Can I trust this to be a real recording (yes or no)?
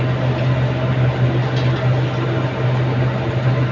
yes